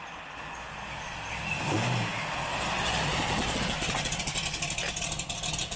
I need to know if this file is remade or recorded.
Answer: recorded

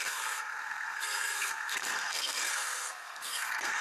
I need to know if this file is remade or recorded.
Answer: remade